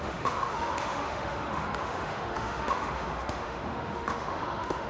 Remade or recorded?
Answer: remade